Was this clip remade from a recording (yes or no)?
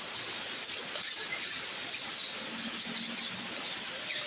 no